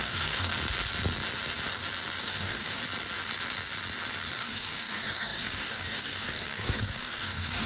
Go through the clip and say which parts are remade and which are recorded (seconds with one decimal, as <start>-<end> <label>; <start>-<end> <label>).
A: 0.0-0.5 remade; 0.5-2.2 recorded; 2.2-2.8 remade; 2.8-4.3 recorded; 4.3-7.7 remade